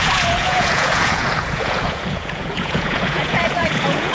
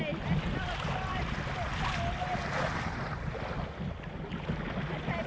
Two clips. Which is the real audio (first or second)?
second